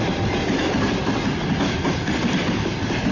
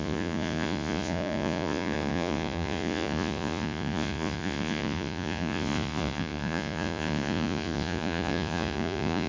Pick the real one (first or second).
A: first